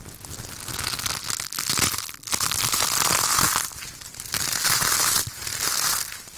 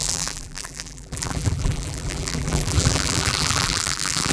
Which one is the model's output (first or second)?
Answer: second